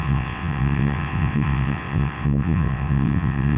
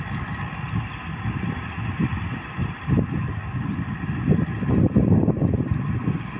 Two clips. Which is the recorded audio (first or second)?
second